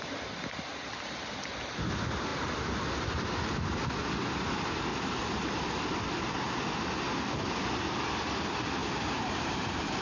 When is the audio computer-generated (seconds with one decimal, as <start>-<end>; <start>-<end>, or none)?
4.9-5.8; 8.8-10.0